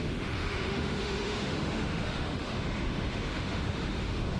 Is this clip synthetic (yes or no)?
yes